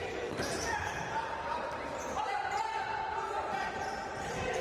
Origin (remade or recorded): remade